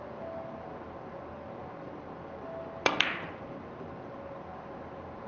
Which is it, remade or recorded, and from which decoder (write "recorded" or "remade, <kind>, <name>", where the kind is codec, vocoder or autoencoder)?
recorded